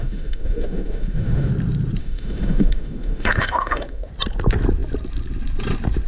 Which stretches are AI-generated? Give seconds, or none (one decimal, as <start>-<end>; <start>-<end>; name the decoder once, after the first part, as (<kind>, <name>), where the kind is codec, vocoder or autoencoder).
0.0-1.5 (autoencoder, DAC-VAE); 2.0-4.1